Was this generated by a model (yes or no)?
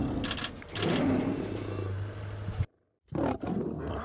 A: no